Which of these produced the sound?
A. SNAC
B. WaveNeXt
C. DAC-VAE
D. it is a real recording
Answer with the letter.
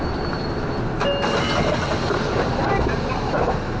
D